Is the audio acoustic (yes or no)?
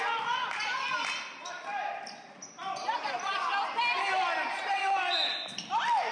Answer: yes